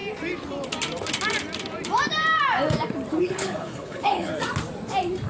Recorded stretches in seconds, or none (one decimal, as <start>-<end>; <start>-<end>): 0.0-3.2; 4.3-5.3